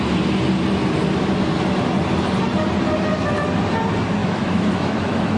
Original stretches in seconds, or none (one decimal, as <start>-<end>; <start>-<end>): 0.0-4.2